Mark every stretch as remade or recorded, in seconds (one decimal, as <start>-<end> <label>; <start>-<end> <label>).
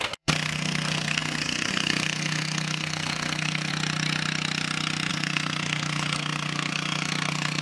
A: 0.0-3.7 remade; 3.7-5.1 recorded; 5.1-7.6 remade